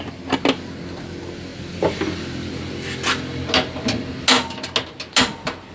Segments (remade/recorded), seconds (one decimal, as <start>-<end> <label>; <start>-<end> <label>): 0.0-5.7 recorded